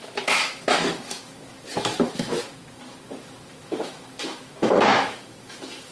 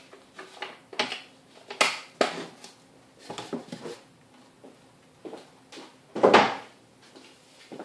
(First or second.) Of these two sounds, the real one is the second